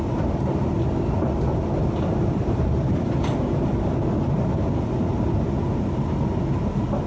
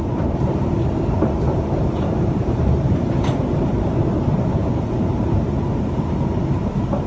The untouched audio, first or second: first